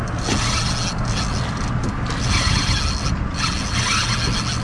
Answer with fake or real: real